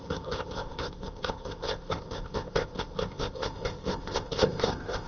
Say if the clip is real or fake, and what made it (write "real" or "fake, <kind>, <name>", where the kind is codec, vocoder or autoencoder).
fake, codec, ZipCodec